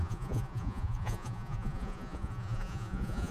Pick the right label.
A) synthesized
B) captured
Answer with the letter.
A